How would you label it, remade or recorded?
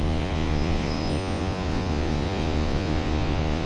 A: remade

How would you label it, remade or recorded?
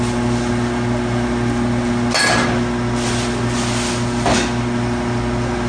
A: recorded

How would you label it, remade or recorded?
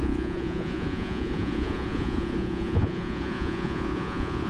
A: remade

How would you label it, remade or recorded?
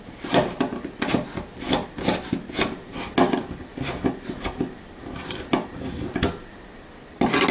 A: recorded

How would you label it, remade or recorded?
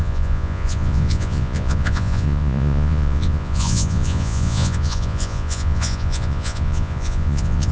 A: remade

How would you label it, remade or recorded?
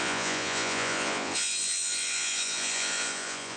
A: remade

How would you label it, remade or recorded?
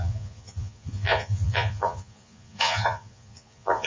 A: remade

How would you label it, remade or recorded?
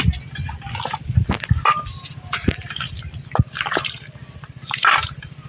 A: recorded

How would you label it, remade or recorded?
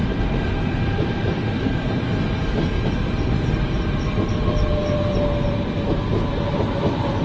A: recorded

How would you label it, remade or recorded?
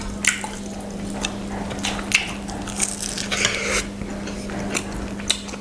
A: recorded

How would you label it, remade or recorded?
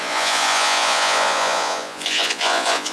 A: remade